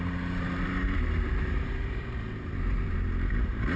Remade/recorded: remade